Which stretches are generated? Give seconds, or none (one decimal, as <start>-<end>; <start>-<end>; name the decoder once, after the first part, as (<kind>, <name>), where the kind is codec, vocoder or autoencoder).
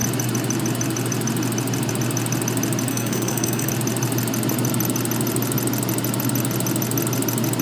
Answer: 2.9-3.7 (codec, SNAC)